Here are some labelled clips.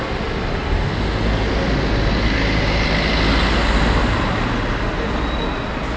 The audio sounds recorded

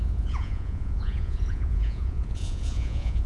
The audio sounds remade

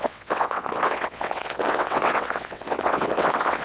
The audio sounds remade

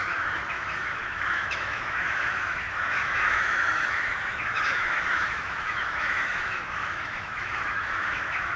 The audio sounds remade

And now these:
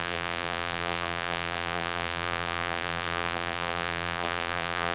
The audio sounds remade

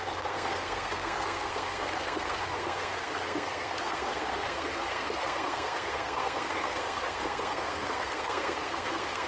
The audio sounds remade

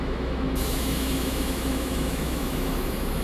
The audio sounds remade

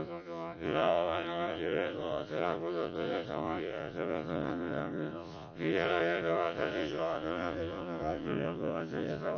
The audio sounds remade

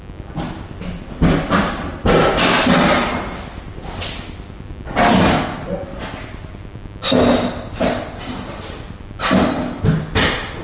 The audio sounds recorded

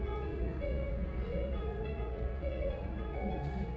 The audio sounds remade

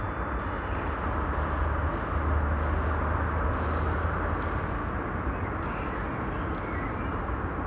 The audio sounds recorded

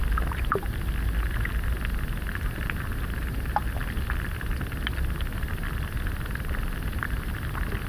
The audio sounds recorded